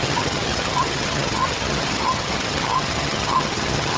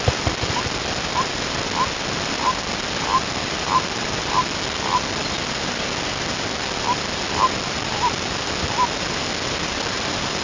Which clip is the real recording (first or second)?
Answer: second